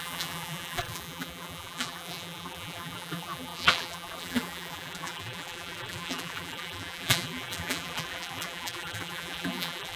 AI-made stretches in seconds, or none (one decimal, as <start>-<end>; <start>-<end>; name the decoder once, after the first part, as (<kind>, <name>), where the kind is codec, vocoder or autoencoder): 0.0-10.0 (vocoder, BigVGAN v2)